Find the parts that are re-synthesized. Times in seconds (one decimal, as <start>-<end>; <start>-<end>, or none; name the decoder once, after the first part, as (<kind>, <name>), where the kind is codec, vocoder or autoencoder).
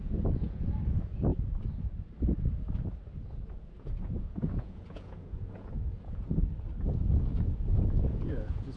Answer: 0.0-1.3 (vocoder, Vocos); 3.5-6.4; 7.2-8.8